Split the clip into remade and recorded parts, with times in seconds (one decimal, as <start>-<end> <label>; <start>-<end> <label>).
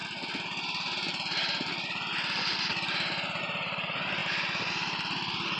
0.0-3.4 recorded; 3.4-4.2 remade; 4.2-4.7 recorded; 4.7-5.6 remade